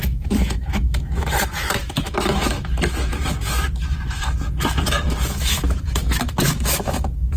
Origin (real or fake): fake